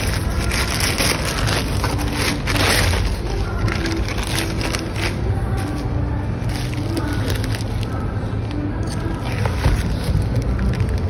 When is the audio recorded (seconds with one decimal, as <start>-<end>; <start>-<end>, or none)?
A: 0.0-11.1